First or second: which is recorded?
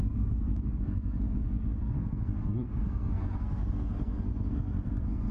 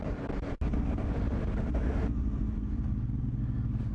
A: second